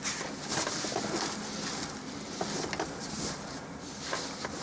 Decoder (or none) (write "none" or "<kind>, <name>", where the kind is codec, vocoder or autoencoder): none